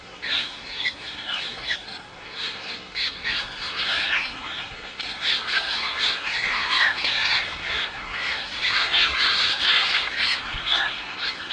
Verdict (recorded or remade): remade